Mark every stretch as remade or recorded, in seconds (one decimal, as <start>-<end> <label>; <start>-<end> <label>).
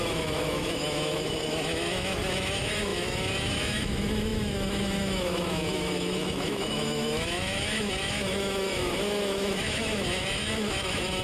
0.0-11.2 remade